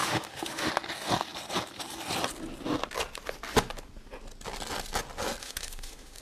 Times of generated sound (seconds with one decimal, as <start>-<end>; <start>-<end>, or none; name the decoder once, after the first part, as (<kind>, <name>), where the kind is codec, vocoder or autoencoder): 0.0-0.7 (autoencoder, DAC-VAE); 5.4-6.2